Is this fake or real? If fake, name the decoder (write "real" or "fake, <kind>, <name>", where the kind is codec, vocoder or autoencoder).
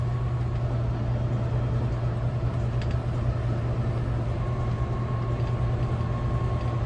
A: real